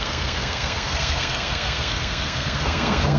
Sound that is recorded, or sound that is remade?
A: remade